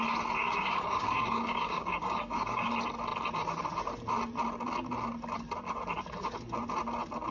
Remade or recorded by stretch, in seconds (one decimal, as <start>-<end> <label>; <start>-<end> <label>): 0.0-0.4 recorded; 0.4-2.7 remade; 2.7-7.3 recorded

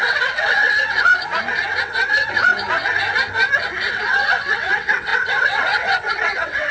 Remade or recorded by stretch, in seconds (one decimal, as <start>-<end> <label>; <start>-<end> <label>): 0.0-1.1 remade; 1.1-1.8 recorded; 1.8-2.5 remade; 2.5-3.9 recorded; 3.9-6.7 remade

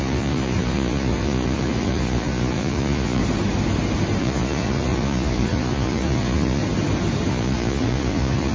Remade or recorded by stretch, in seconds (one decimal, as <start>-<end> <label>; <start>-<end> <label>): 0.0-3.2 remade; 3.2-4.2 recorded; 4.2-6.6 remade; 6.6-7.3 recorded; 7.3-8.5 remade

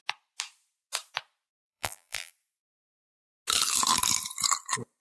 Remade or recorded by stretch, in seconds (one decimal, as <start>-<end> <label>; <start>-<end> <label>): 0.0-1.5 recorded; 1.5-2.3 remade; 2.3-5.0 recorded

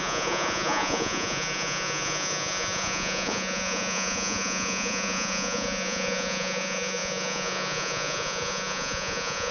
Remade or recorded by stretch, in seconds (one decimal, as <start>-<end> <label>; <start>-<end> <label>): 0.0-9.5 remade